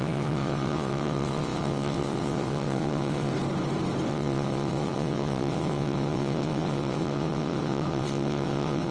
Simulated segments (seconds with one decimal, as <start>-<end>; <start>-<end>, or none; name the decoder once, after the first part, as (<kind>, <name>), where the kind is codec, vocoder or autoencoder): 0.0-3.3 (vocoder, WaveNeXt); 4.1-8.9